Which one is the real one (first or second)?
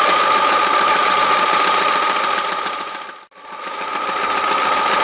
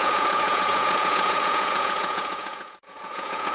first